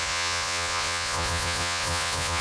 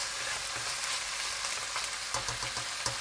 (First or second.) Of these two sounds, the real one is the second